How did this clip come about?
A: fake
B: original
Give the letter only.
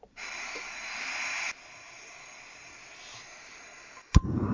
B